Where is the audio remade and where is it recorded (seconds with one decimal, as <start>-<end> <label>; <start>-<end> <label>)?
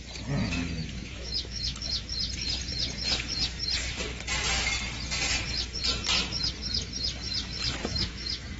0.0-0.8 recorded; 0.8-2.0 remade; 2.0-7.8 recorded; 7.8-8.6 remade